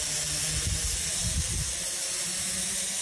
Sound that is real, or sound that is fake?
real